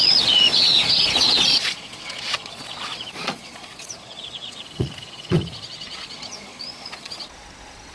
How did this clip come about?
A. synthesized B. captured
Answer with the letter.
A